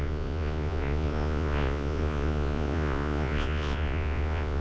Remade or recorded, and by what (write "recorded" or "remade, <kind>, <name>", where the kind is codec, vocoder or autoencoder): remade, vocoder, Vocos